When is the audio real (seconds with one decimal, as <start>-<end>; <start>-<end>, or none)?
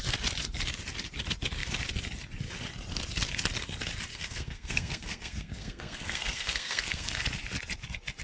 0.0-4.1; 7.2-8.2